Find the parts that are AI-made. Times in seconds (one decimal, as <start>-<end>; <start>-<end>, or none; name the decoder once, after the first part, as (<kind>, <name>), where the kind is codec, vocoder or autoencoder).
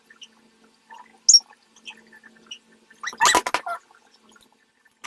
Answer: none